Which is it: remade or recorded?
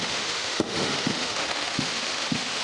remade